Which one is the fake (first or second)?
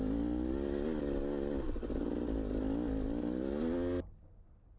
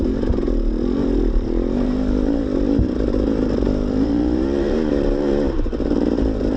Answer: second